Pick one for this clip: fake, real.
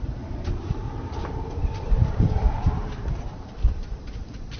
fake